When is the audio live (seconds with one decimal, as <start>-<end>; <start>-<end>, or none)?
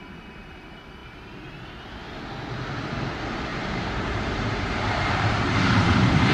0.0-3.5